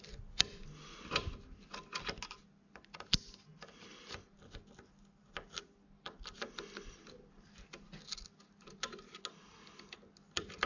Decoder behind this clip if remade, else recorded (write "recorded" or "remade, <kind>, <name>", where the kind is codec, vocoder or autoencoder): recorded